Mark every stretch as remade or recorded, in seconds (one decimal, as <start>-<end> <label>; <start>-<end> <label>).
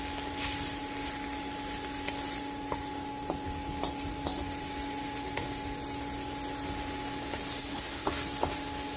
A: 0.0-7.6 recorded; 7.6-8.1 remade; 8.1-9.0 recorded